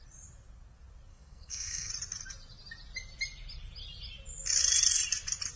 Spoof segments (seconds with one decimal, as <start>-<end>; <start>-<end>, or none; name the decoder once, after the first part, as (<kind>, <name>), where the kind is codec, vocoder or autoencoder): 1.1-1.9 (codec, SNAC)